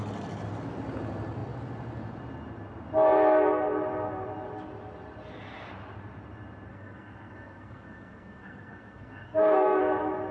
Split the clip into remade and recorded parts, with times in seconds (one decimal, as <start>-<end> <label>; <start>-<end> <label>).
0.0-6.7 recorded; 6.7-9.8 remade; 9.8-10.3 recorded